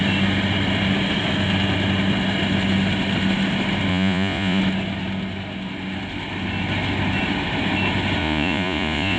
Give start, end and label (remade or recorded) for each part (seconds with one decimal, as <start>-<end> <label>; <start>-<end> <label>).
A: 0.0-3.9 recorded; 3.9-4.6 remade; 4.6-8.2 recorded; 8.2-9.2 remade